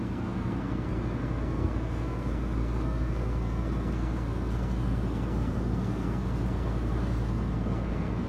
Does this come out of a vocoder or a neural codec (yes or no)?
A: yes